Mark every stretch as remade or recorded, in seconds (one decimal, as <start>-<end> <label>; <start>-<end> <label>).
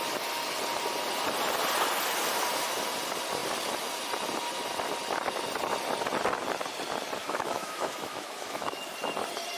0.0-7.2 recorded; 7.2-8.8 remade; 8.8-9.6 recorded